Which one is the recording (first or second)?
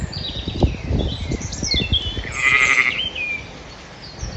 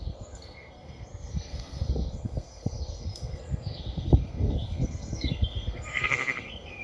first